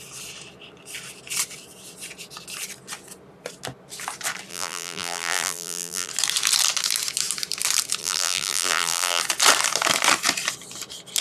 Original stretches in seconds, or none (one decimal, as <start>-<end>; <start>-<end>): 0.0-4.5; 6.1-8.0; 9.2-11.2